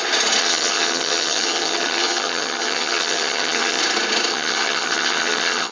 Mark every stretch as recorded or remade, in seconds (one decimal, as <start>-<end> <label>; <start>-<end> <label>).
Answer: 0.0-0.4 recorded; 0.4-3.8 remade; 3.8-4.3 recorded; 4.3-5.7 remade